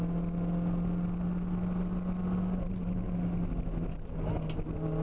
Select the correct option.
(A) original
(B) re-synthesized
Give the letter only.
A